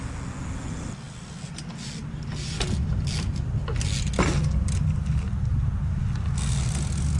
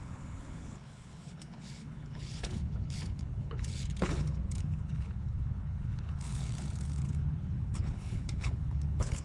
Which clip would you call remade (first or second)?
second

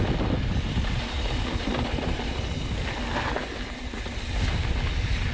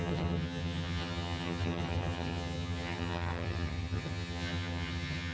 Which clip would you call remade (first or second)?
second